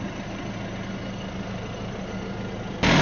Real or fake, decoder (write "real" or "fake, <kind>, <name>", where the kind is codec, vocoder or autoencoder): real